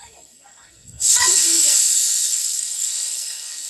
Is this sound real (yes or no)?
no